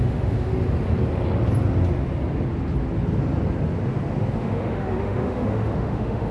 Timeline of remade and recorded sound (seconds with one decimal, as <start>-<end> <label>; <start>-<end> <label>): 0.0-0.5 remade; 0.5-4.3 recorded; 4.3-6.3 remade